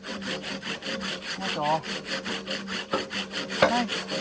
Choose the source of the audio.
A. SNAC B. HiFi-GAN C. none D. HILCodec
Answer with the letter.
C